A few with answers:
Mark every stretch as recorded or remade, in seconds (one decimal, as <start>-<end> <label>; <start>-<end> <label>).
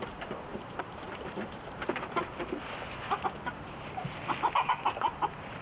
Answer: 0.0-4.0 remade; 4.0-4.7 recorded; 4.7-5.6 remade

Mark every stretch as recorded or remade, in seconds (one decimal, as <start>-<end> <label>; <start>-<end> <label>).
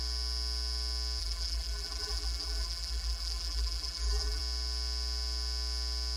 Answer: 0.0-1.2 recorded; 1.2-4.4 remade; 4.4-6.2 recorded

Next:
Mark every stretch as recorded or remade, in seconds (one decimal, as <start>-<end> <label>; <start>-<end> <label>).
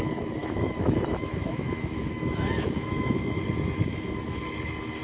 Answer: 0.0-0.4 recorded; 0.4-3.4 remade; 3.4-3.9 recorded; 3.9-4.4 remade; 4.4-5.0 recorded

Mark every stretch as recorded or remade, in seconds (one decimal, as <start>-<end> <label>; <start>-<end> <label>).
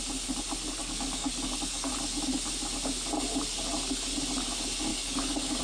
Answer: 0.0-0.8 recorded; 0.8-1.9 remade; 1.9-4.9 recorded; 4.9-5.6 remade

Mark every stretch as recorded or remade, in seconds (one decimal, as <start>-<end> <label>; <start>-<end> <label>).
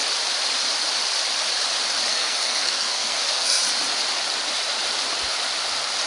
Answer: 0.0-2.1 recorded; 2.1-3.6 remade; 3.6-6.1 recorded